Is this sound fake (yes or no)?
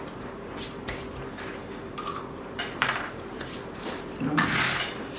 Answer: yes